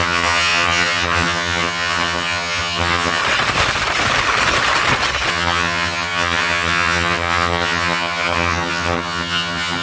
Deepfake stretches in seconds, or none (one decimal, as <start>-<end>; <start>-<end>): 0.0-3.2; 5.3-9.8